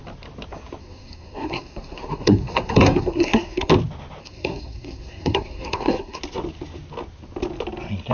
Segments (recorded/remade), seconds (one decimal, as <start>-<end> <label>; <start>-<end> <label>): 0.0-0.8 recorded; 0.8-3.7 remade; 3.7-4.2 recorded; 4.2-6.2 remade; 6.2-8.1 recorded